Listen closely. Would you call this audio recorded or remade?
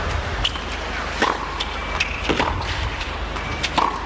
recorded